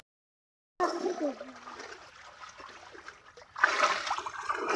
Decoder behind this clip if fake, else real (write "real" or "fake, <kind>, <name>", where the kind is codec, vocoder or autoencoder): real